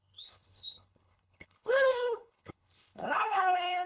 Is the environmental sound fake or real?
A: fake